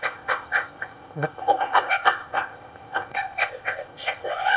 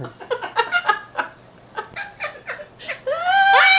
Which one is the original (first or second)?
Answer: second